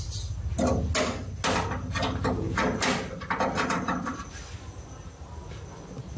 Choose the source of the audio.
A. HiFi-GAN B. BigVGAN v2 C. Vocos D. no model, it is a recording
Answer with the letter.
D